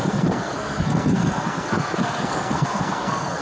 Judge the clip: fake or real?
fake